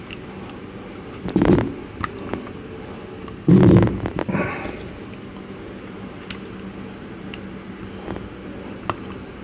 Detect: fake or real real